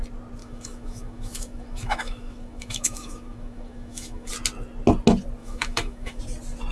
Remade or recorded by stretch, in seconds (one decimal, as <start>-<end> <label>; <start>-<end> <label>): 0.0-0.4 recorded; 0.4-4.3 remade; 4.3-5.4 recorded; 5.4-6.2 remade; 6.2-6.7 recorded

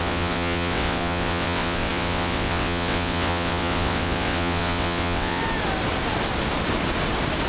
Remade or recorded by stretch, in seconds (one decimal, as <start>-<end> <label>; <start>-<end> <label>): 0.0-5.4 remade; 5.4-7.5 recorded

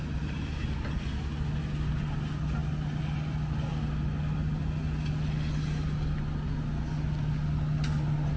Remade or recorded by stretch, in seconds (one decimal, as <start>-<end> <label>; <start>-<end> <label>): 0.0-8.4 recorded

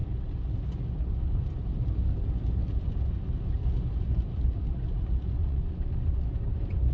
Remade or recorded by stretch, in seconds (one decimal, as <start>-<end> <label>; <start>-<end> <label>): 0.0-5.4 recorded; 5.4-6.2 remade; 6.2-6.9 recorded

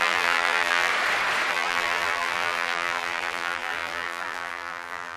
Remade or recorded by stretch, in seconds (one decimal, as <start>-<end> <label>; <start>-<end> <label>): 0.0-0.9 remade; 0.9-1.5 recorded; 1.5-5.2 remade

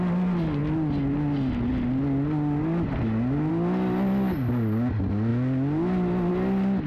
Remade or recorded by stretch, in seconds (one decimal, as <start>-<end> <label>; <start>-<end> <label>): 0.0-6.9 recorded

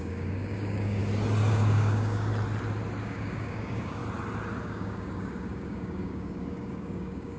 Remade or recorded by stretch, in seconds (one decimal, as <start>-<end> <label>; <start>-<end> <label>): 0.0-1.0 remade; 1.0-1.5 recorded; 1.5-2.3 remade; 2.3-3.0 recorded; 3.0-4.0 remade; 4.0-4.6 recorded; 4.6-7.4 remade